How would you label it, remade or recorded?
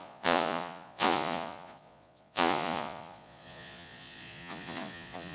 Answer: remade